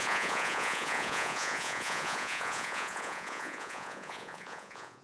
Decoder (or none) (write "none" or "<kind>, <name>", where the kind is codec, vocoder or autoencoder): vocoder, Vocos